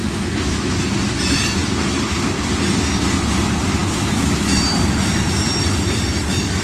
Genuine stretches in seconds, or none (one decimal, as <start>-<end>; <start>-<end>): 0.8-3.8; 4.6-6.6